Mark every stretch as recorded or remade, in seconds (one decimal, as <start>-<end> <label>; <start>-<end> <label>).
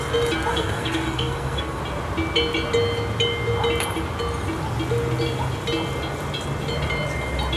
0.0-0.5 recorded; 0.5-1.8 remade; 1.8-7.6 recorded